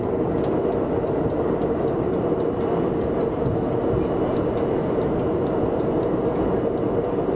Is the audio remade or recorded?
recorded